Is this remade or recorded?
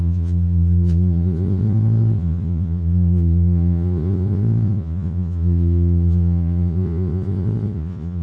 remade